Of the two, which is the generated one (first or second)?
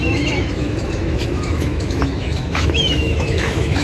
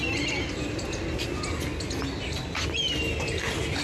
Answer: first